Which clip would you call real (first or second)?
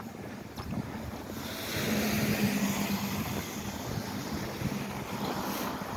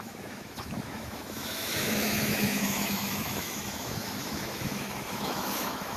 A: first